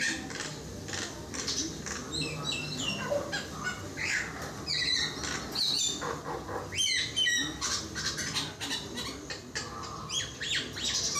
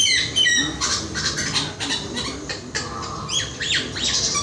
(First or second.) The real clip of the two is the first